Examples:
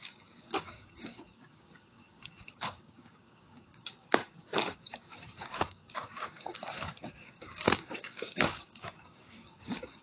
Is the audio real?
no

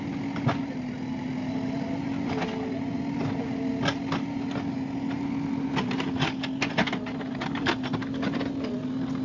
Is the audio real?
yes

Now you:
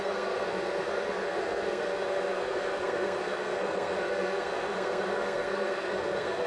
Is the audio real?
no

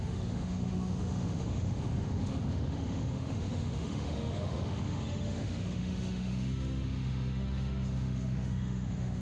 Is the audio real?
no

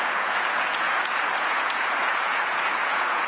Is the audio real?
no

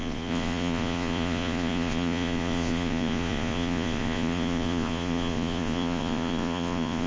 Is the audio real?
no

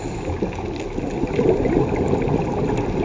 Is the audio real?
yes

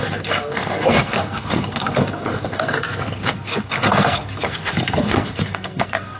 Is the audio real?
no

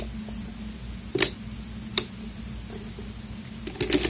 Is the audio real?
yes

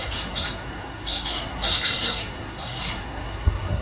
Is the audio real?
no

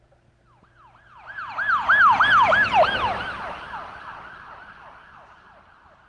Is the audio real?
yes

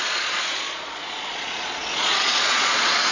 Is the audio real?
no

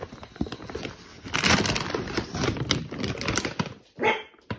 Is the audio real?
yes